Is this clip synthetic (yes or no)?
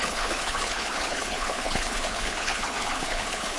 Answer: yes